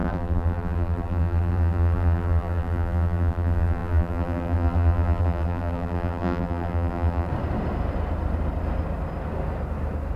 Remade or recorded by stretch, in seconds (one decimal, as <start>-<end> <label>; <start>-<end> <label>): 0.0-7.3 remade; 7.3-10.2 recorded